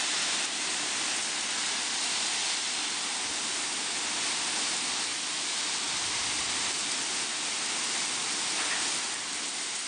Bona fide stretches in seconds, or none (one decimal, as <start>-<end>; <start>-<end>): 0.0-9.9